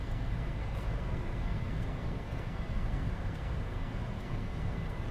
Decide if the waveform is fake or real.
fake